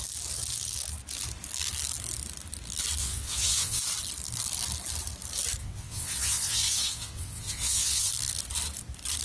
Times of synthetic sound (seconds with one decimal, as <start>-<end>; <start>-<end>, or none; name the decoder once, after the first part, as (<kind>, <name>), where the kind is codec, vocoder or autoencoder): 3.0-3.8 (vocoder, WaveNeXt); 5.6-8.1